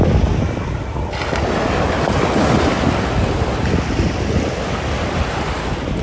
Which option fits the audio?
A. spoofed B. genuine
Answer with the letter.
B